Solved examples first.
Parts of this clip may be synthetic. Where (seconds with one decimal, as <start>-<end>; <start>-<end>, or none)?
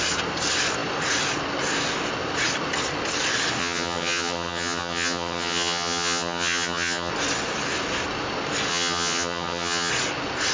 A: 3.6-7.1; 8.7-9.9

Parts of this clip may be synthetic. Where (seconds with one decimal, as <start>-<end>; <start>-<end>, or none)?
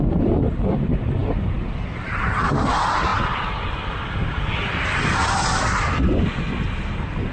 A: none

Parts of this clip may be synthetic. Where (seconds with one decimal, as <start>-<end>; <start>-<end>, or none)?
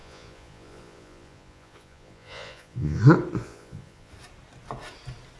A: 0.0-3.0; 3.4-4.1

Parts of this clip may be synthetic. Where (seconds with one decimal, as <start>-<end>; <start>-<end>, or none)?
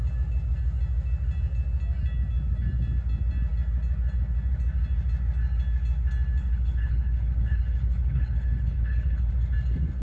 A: 6.4-9.3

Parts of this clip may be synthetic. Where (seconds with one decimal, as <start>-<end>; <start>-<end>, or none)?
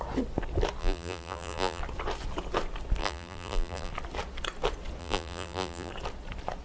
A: 0.8-1.8; 3.0-3.9; 5.0-5.9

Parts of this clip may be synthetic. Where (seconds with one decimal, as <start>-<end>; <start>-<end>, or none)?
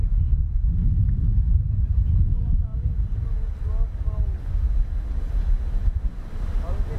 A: none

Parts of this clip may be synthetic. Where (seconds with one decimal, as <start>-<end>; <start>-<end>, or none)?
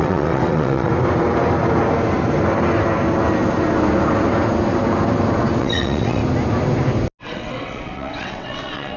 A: 0.0-0.9; 5.6-6.2; 7.2-9.0